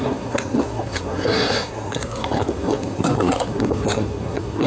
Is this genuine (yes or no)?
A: no